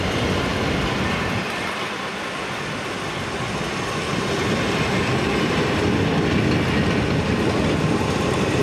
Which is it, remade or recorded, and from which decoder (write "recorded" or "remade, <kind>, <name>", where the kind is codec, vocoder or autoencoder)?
recorded